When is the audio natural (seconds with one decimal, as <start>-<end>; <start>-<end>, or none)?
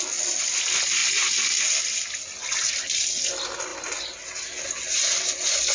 0.0-5.7